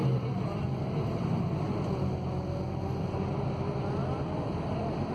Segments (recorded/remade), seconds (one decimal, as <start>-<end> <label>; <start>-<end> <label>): 0.0-5.1 recorded